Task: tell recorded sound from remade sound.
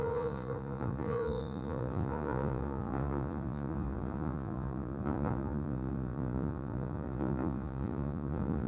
remade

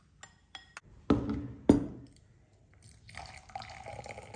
recorded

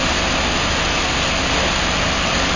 recorded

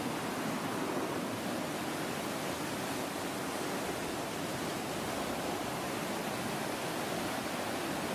recorded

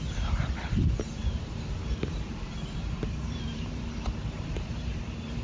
remade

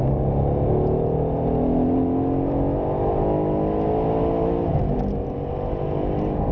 recorded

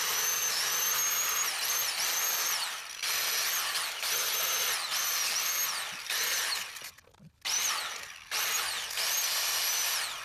recorded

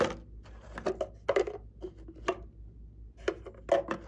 recorded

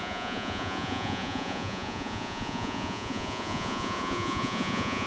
remade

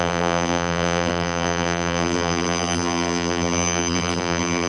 remade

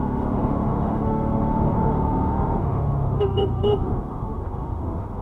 remade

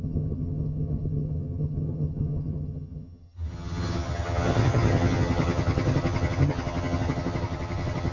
remade